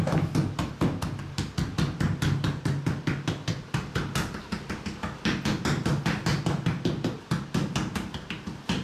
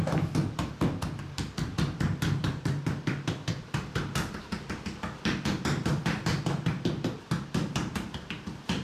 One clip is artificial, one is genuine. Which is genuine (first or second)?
first